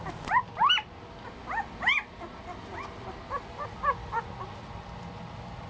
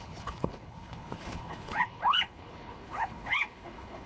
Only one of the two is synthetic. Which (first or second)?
second